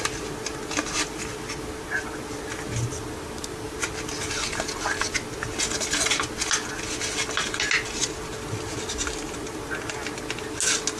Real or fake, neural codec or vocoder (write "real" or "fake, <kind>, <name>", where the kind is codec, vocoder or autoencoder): real